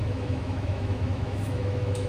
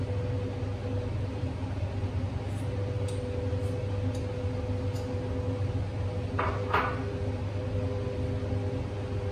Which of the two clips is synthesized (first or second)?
first